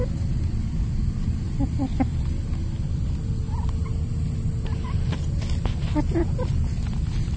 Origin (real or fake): real